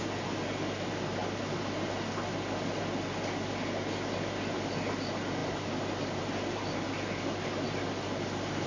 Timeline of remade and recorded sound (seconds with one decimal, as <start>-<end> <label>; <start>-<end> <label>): 0.0-8.7 recorded